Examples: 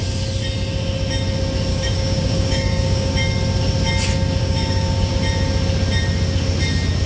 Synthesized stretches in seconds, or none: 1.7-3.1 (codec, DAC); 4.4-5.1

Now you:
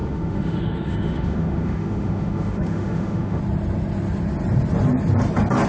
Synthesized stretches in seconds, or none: 0.0-3.4 (autoencoder, DAC-VAE)

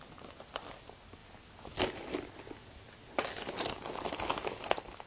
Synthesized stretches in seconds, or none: none

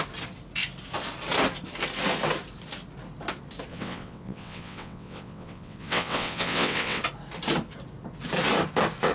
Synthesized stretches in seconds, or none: 3.7-7.0 (vocoder, WaveNeXt)

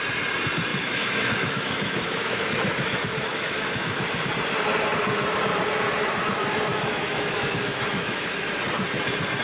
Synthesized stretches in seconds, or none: 0.7-4.3 (autoencoder, DAC-VAE); 6.7-8.4